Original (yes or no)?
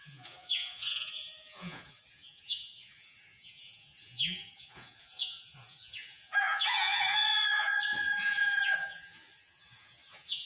no